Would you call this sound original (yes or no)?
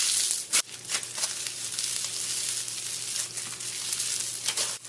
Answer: yes